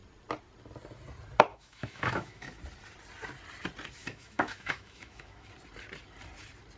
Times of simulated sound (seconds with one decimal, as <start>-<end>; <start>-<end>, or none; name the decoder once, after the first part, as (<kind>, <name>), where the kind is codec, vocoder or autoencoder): 1.5-2.6 (autoencoder, DAC-VAE); 4.0-5.5